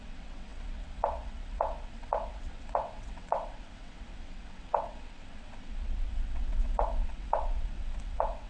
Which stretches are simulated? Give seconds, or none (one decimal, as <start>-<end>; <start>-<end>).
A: 0.0-8.5